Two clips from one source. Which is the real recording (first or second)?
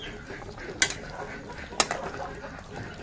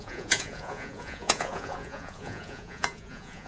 first